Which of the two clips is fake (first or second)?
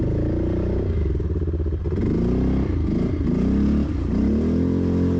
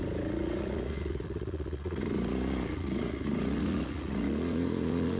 second